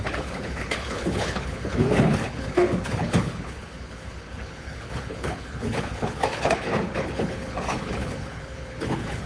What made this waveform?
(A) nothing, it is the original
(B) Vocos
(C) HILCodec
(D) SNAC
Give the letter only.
C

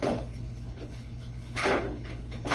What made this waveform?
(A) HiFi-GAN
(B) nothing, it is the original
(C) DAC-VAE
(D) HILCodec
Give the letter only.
D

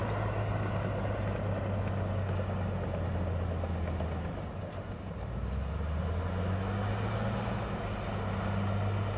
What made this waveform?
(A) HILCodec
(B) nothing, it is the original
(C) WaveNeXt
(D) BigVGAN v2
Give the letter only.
B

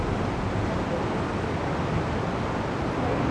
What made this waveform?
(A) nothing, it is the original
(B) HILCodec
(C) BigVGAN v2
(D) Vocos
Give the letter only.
A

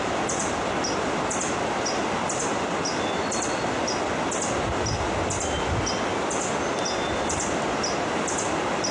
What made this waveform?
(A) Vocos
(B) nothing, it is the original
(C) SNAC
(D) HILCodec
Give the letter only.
B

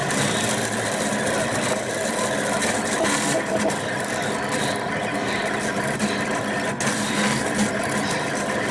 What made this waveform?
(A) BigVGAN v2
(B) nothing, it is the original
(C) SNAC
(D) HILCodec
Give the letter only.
B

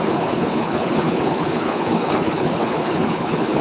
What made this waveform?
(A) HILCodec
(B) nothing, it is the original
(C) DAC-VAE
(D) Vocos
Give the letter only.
A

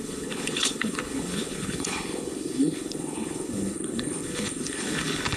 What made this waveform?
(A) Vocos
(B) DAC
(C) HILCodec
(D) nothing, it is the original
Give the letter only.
C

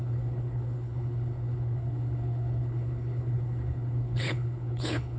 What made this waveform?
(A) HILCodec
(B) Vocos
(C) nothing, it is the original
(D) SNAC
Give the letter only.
A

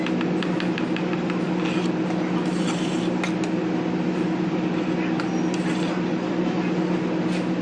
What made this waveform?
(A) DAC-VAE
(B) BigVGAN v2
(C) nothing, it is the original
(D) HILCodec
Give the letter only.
C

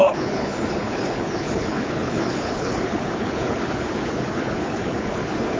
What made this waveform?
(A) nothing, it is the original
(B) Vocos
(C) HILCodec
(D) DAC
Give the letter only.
C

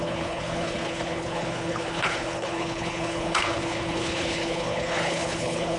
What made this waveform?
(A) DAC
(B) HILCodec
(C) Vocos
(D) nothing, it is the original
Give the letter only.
B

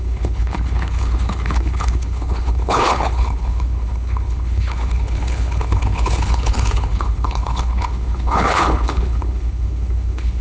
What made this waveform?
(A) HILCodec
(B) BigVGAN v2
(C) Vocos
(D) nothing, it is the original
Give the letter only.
A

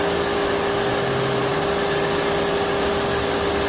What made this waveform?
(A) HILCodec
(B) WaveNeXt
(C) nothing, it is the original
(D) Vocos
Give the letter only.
C